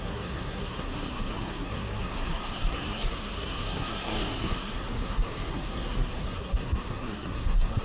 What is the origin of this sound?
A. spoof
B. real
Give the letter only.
A